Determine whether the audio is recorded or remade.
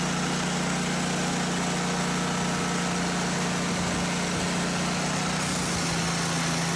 recorded